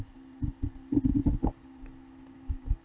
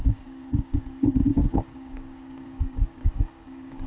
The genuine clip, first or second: first